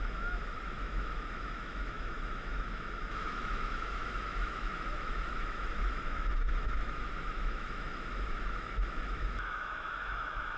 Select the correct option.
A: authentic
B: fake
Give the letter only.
B